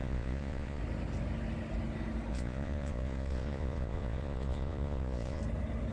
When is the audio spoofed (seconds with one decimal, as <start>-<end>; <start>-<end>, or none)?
0.0-0.8; 2.3-5.4